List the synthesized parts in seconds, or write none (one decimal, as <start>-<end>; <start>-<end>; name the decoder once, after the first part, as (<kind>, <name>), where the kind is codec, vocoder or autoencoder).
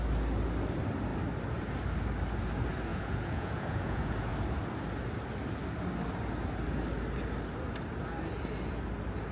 2.9-4.3 (vocoder, Vocos)